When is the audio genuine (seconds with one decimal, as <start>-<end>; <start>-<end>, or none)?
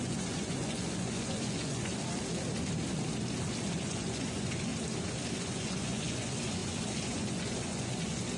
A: 1.9-3.7; 4.7-5.4